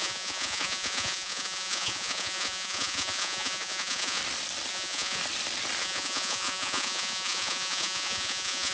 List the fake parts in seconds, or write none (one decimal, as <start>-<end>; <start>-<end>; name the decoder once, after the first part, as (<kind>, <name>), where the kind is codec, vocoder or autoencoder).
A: 0.0-4.2 (vocoder, Vocos); 4.7-5.2; 5.8-8.7